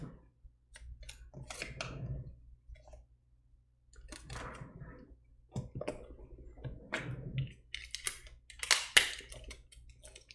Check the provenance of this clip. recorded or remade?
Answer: recorded